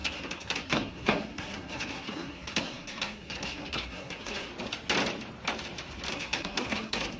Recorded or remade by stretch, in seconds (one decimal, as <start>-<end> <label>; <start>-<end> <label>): 0.0-4.5 remade; 4.5-6.1 recorded; 6.1-7.2 remade